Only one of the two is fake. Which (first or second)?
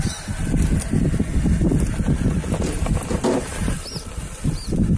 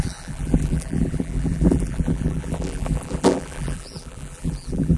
second